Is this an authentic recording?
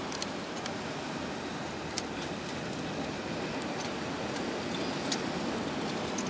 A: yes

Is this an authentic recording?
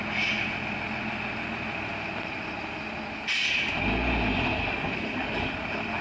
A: yes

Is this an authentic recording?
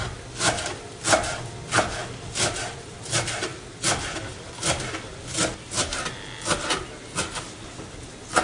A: yes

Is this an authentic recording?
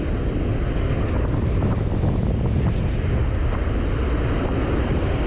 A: yes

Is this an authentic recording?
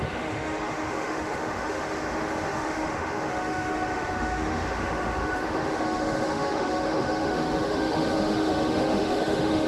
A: no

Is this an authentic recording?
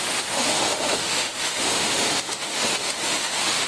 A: no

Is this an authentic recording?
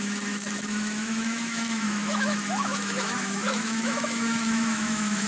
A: no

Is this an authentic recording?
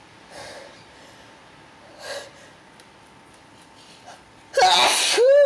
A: yes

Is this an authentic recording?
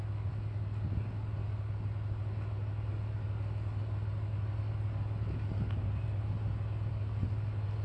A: yes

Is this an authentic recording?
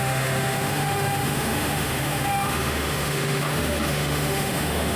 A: no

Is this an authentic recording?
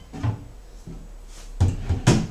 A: yes